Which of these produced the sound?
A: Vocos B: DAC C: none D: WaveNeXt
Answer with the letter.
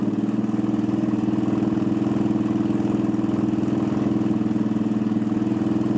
C